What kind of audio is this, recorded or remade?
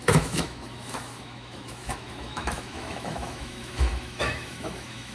remade